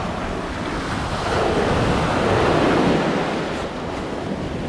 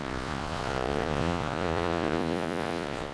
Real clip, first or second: first